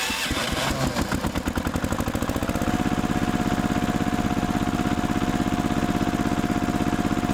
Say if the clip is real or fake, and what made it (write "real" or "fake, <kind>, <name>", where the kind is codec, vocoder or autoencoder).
real